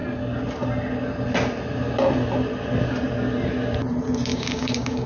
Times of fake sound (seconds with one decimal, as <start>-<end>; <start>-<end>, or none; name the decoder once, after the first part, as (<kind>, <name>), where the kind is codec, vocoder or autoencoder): 4.3-5.1 (codec, DAC)